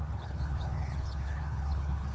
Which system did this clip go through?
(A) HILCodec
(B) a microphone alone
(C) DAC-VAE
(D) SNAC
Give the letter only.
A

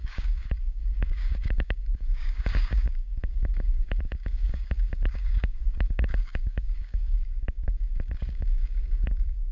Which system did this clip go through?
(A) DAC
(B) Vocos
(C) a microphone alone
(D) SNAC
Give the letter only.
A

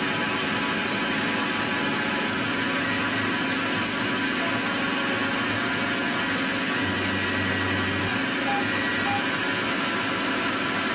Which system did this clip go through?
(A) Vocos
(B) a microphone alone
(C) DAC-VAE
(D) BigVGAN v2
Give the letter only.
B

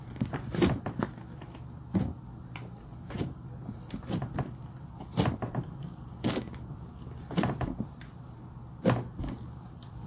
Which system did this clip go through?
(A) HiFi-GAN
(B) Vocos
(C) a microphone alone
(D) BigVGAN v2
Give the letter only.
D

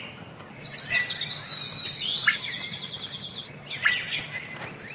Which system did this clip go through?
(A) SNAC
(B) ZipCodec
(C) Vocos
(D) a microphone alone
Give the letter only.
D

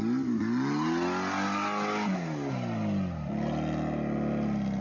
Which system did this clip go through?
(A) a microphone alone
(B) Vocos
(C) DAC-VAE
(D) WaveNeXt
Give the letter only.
A